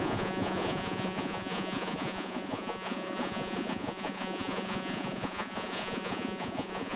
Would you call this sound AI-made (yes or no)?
yes